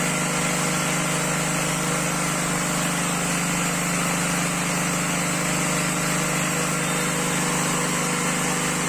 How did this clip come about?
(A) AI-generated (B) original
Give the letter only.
B